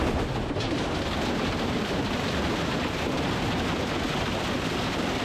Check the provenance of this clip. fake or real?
real